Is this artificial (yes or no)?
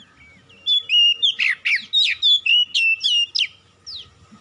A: no